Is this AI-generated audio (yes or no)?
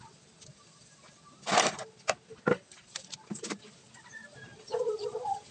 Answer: no